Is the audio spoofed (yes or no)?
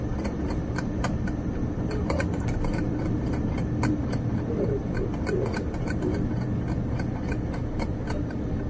no